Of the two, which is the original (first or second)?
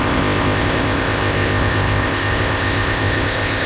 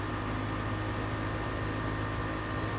second